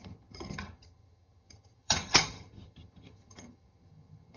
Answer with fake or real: fake